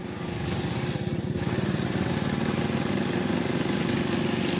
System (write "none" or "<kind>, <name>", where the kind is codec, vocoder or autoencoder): none